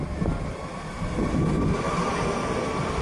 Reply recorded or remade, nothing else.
recorded